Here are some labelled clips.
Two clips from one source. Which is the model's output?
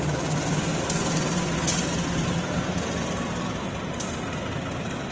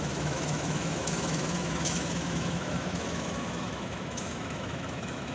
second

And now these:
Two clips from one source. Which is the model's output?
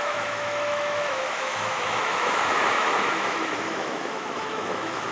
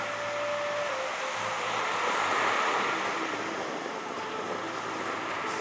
first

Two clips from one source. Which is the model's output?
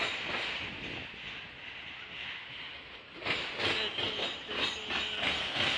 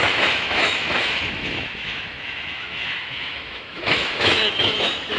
second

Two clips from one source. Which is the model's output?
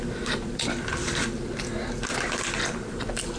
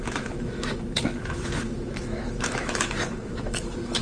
second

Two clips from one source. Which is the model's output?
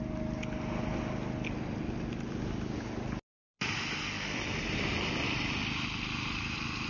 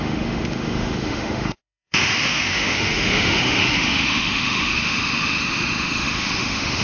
second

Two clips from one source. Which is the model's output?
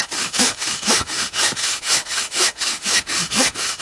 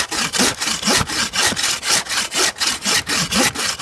first